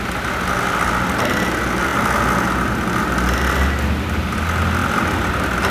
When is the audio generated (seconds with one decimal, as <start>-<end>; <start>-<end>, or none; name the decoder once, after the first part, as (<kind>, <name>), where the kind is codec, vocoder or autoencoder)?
4.8-5.7 (vocoder, BigVGAN v2)